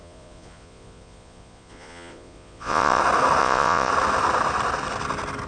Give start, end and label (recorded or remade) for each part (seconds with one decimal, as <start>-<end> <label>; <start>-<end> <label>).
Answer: 0.0-3.0 remade; 3.0-3.4 recorded; 3.4-3.9 remade; 3.9-5.5 recorded